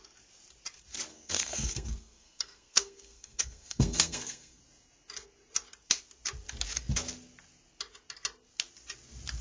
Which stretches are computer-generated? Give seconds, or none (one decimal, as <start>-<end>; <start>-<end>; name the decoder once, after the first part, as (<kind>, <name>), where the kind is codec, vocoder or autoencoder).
1.1-4.6 (codec, SNAC)